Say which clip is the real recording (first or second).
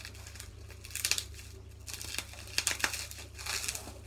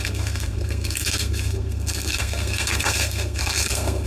first